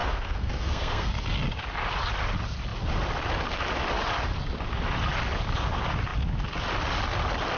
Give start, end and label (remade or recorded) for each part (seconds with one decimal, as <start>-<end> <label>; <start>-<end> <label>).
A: 0.0-1.1 remade; 1.1-7.6 recorded